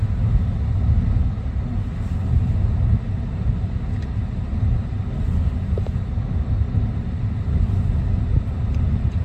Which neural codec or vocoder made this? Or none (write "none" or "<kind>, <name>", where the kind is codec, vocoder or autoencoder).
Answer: none